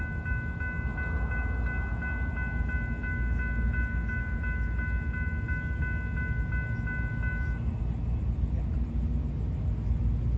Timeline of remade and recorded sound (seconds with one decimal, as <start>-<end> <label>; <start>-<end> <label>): 0.0-10.4 recorded